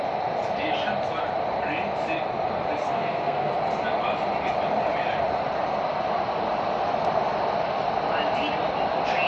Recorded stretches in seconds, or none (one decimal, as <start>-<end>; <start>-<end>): 0.0-2.8; 3.5-9.3